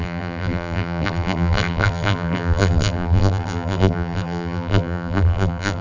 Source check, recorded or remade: remade